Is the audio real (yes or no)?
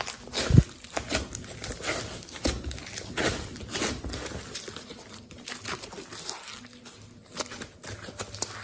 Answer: yes